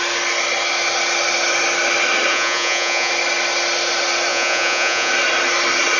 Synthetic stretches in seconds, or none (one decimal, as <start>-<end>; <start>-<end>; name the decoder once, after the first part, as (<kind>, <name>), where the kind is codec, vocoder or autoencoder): 2.3-3.1 (vocoder, Vocos); 4.3-5.1